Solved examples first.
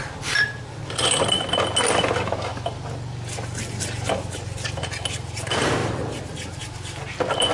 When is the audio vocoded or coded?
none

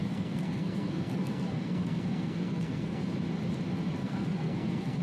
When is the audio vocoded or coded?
0.0-3.0 (codec, SNAC); 4.0-5.0

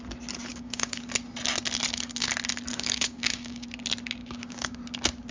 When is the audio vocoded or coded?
0.5-1.0 (codec, DAC); 2.7-3.7; 4.2-4.8

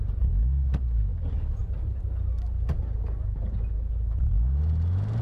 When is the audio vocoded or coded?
none

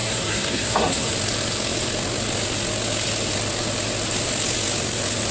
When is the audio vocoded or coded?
0.0-1.1 (codec, SNAC)

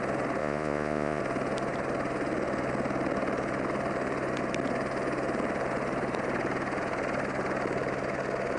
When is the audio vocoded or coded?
0.4-1.2 (vocoder, Vocos)